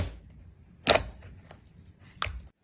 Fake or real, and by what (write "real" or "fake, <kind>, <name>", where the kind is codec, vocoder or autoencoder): real